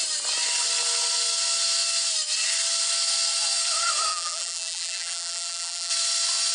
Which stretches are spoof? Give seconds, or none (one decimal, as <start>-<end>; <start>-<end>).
4.1-5.9

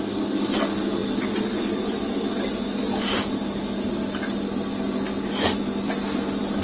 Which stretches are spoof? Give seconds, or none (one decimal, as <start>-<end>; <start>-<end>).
none

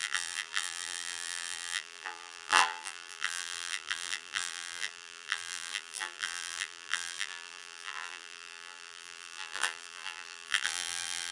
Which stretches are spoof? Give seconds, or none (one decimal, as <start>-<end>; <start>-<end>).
0.0-11.3

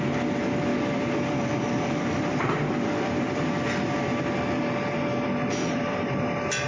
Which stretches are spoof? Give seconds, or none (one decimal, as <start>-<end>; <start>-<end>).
0.7-4.1; 5.6-6.2